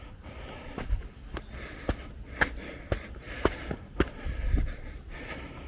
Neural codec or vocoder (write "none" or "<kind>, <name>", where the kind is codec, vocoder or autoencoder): none